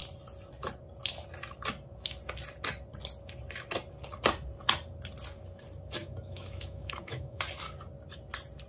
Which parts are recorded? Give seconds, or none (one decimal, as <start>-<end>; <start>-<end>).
0.0-6.0; 7.4-8.7

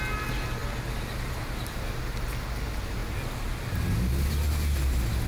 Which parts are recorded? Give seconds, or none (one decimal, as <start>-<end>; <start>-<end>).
0.0-5.3

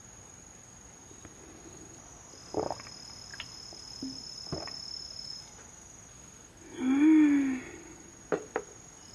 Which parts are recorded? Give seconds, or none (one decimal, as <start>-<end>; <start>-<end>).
0.0-9.1

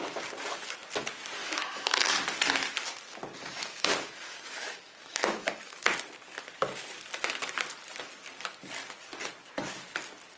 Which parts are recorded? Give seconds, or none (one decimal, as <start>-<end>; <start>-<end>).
0.0-1.4; 2.2-3.5; 5.8-10.4

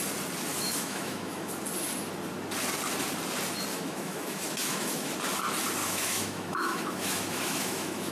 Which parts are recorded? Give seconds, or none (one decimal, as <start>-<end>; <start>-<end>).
0.0-0.5; 1.5-3.7; 5.1-5.8